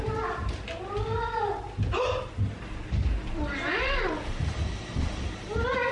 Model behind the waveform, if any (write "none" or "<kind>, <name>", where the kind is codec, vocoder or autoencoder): none